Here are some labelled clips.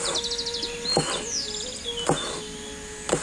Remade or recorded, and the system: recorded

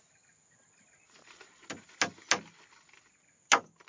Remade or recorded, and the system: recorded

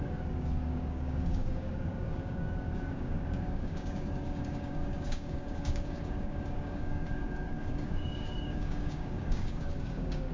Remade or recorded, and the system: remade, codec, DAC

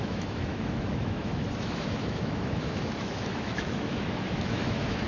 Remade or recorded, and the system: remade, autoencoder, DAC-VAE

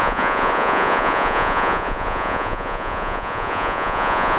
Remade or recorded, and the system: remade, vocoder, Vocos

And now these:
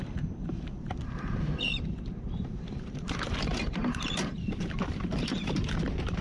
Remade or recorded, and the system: remade, vocoder, BigVGAN v2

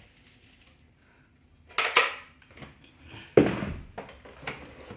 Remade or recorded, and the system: recorded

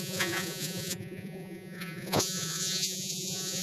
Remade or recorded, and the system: remade, vocoder, Vocos